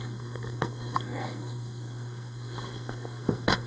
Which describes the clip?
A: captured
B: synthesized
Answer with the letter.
B